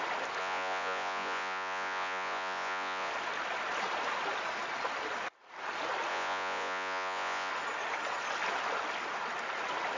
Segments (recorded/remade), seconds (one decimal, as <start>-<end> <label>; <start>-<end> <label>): 0.0-0.4 recorded; 0.4-3.1 remade; 3.1-6.1 recorded; 6.1-7.5 remade; 7.5-10.0 recorded